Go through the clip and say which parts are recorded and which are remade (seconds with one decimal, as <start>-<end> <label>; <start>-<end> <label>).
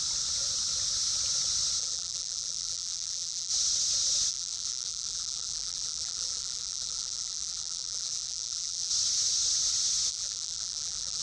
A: 0.0-1.8 recorded; 1.8-3.5 remade; 3.5-4.3 recorded; 4.3-8.9 remade; 8.9-10.1 recorded; 10.1-11.2 remade